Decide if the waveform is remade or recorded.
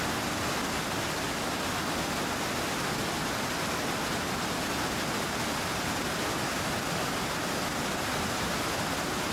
recorded